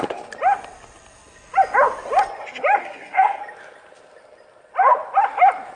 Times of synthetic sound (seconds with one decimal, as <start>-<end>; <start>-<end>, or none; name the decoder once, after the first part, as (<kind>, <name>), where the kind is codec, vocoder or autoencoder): 2.8-3.4 (codec, SNAC)